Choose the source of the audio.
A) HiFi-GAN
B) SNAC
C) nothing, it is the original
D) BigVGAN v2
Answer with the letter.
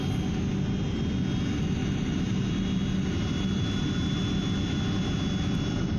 C